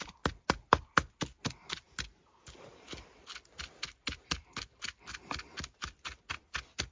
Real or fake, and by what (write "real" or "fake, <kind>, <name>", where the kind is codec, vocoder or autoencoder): real